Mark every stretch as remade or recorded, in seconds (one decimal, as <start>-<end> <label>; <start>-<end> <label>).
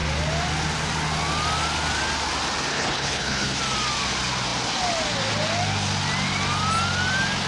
0.0-2.7 recorded; 2.7-3.6 remade; 3.6-7.5 recorded